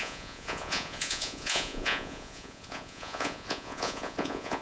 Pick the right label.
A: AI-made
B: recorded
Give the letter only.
A